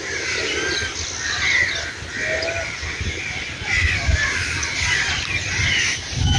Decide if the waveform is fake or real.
real